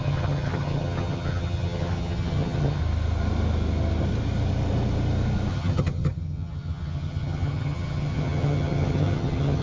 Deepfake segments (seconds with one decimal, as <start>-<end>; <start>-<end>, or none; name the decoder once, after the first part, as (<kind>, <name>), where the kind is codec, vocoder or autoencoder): 0.0-2.8 (vocoder, HiFi-GAN); 5.5-9.6